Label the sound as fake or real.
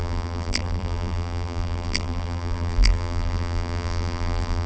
fake